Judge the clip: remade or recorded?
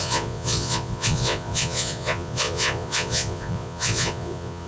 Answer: remade